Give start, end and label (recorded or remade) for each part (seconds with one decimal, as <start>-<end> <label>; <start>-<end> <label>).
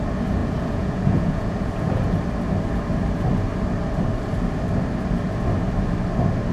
0.0-0.4 recorded; 0.4-2.2 remade; 2.2-6.5 recorded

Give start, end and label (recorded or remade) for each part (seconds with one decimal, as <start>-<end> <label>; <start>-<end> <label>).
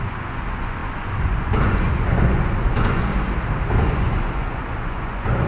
0.0-3.1 remade; 3.1-3.8 recorded; 3.8-5.5 remade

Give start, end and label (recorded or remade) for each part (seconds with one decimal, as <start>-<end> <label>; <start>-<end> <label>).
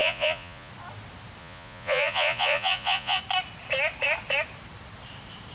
0.0-0.7 remade; 0.7-1.4 recorded; 1.4-3.2 remade; 3.2-5.5 recorded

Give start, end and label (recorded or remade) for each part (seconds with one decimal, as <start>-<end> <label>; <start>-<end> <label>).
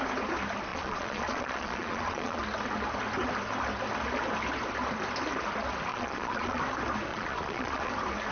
0.0-0.7 recorded; 0.7-2.4 remade; 2.4-5.9 recorded; 5.9-6.6 remade; 6.6-7.1 recorded; 7.1-7.9 remade; 7.9-8.3 recorded